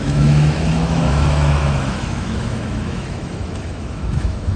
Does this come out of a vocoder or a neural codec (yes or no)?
yes